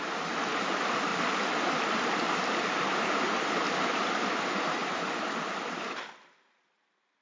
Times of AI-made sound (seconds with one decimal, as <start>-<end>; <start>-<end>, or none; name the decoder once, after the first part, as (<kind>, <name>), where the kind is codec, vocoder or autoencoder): 1.1-3.9 (vocoder, BigVGAN v2); 4.8-6.5